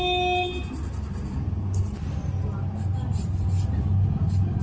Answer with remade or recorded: recorded